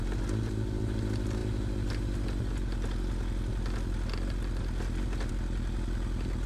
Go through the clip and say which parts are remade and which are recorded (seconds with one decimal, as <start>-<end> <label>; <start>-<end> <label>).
0.0-6.5 recorded